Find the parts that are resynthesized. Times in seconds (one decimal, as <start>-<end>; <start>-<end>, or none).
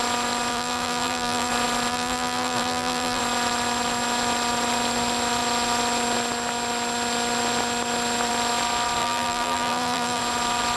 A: 0.5-1.5; 1.9-3.2; 9.0-10.2